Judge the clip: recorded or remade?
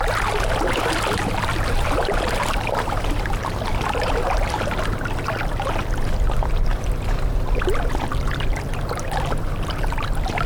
recorded